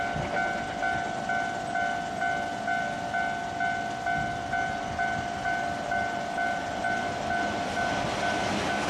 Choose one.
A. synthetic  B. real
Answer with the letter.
B